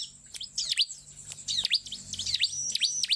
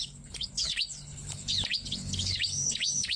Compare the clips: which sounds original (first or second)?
first